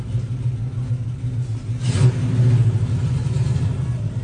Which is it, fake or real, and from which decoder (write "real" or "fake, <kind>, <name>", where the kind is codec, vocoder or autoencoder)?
real